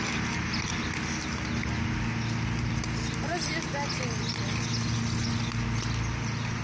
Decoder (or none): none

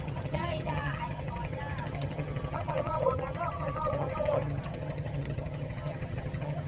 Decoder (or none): vocoder, HiFi-GAN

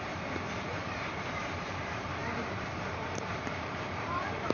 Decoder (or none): vocoder, BigVGAN v2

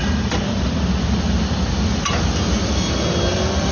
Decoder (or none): none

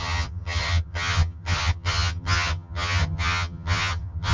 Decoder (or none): vocoder, HiFi-GAN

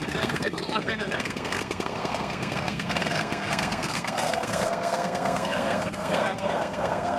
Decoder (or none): codec, SNAC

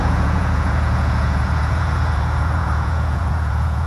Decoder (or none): vocoder, Vocos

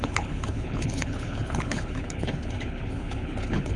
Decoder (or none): codec, HILCodec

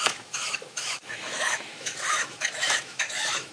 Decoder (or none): autoencoder, DAC-VAE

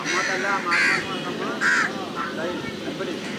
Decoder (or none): none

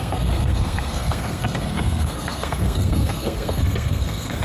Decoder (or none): codec, SNAC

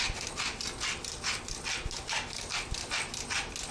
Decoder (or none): none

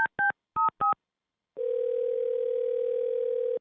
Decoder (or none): none